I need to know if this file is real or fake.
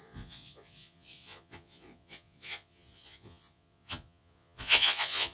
fake